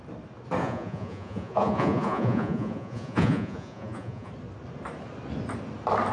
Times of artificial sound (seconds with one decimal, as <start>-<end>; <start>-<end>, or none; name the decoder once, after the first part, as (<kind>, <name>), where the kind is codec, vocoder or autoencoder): 0.6-4.3 (vocoder, Vocos)